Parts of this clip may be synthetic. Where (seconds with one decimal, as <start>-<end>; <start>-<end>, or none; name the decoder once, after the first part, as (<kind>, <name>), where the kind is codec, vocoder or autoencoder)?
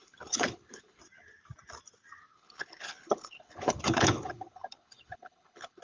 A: 0.0-1.0 (codec, HILCodec); 2.2-5.8